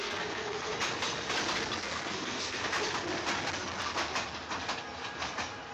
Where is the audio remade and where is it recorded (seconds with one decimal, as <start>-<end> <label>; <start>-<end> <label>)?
0.0-0.7 remade; 0.7-1.8 recorded; 1.8-2.6 remade; 2.6-5.7 recorded

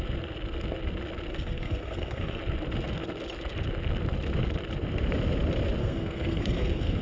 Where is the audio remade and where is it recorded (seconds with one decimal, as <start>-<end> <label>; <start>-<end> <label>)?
0.0-1.3 recorded; 1.3-2.4 remade; 2.4-5.8 recorded; 5.8-7.0 remade

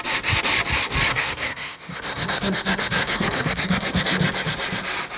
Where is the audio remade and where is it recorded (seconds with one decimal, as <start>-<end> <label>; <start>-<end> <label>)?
0.0-1.1 recorded; 1.1-4.0 remade; 4.0-5.2 recorded